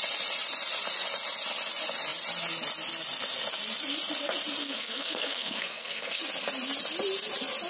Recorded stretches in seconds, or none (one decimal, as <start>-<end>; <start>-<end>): 0.0-4.6; 6.2-7.7